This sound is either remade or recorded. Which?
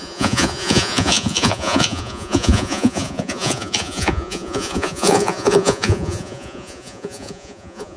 remade